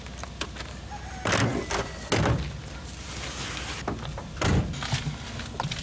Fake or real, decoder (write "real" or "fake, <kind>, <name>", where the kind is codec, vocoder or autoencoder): real